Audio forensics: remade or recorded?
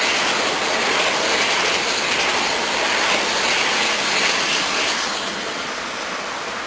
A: recorded